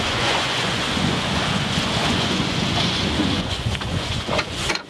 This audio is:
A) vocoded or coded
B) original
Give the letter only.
A